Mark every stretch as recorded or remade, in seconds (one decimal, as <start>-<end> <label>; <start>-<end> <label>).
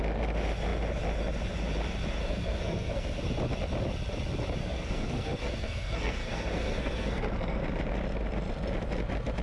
0.0-2.2 recorded; 2.2-3.2 remade; 3.2-4.6 recorded; 4.6-7.6 remade; 7.6-9.4 recorded